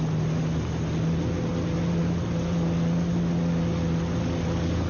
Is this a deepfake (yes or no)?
no